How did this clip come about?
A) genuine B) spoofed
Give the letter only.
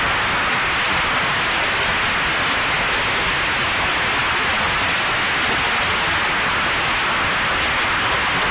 A